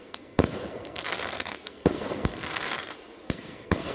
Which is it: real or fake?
fake